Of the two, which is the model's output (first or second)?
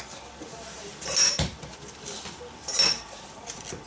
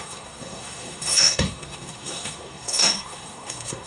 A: second